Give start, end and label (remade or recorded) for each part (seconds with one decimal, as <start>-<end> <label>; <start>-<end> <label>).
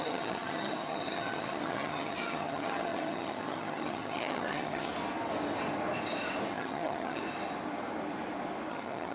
0.0-4.9 remade; 4.9-6.5 recorded; 6.5-7.2 remade; 7.2-8.7 recorded; 8.7-9.1 remade